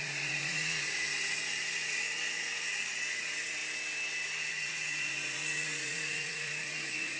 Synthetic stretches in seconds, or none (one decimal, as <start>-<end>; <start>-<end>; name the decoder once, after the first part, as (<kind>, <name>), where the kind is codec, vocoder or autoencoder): 0.0-3.6 (vocoder, Vocos); 4.5-7.2

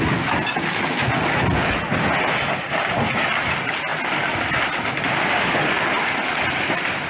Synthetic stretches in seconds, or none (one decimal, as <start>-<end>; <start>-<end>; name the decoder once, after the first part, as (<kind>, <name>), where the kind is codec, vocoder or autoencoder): none

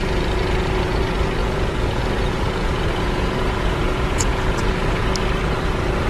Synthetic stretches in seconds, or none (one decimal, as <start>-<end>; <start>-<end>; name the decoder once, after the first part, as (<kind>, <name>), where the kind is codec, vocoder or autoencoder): 1.4-5.1 (vocoder, Vocos)

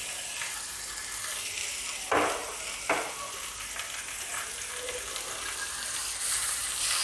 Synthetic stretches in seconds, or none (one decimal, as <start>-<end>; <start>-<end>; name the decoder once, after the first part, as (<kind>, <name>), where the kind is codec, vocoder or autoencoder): none

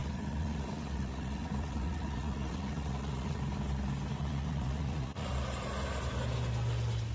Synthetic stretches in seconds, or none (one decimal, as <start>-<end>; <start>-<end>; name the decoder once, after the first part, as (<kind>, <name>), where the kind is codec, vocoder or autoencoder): 0.0-3.4 (vocoder, Vocos); 4.1-5.3

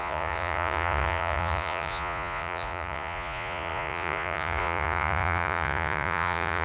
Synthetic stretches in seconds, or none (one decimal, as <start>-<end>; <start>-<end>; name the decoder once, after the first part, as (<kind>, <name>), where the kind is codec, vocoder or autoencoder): 0.0-6.6 (vocoder, Vocos)